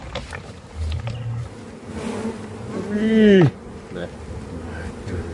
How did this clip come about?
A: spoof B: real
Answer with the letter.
B